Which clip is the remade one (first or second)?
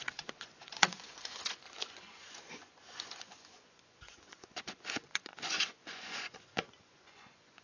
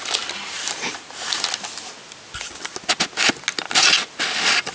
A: first